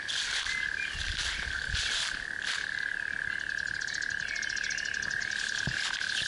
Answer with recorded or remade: recorded